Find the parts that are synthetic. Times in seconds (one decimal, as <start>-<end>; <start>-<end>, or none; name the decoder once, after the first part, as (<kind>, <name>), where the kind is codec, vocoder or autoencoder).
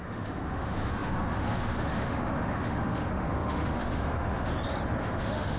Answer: 0.0-4.5 (autoencoder, DAC-VAE); 5.0-5.6